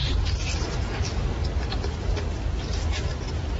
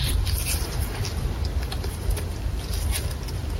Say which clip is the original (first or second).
first